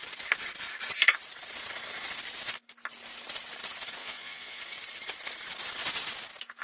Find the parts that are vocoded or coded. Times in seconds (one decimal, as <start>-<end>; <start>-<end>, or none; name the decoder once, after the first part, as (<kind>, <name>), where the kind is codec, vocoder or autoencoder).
4.0-4.6 (vocoder, Vocos)